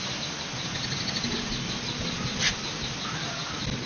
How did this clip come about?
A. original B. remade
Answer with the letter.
A